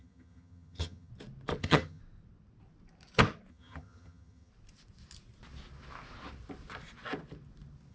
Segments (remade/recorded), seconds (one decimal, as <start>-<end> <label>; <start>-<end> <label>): 0.0-1.1 remade; 1.1-1.6 recorded; 1.6-2.0 remade; 2.0-3.5 recorded; 3.5-4.5 remade; 4.5-7.9 recorded